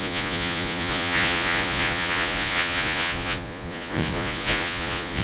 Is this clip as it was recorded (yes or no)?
no